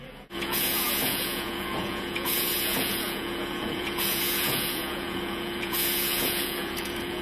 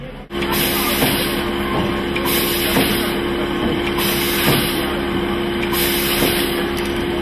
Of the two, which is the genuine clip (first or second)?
second